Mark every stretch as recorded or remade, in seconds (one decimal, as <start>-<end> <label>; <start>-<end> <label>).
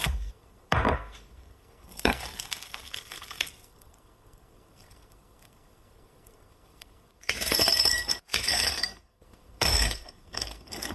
0.0-10.9 remade